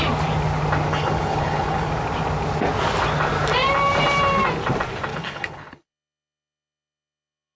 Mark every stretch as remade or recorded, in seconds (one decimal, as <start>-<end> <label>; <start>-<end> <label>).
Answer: 0.0-0.9 recorded; 0.9-1.9 remade; 1.9-5.1 recorded; 5.1-7.6 remade